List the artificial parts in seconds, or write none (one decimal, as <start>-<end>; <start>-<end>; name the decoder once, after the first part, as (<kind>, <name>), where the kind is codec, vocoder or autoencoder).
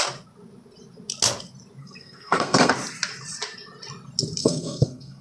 1.8-2.7 (codec, SNAC); 4.4-5.2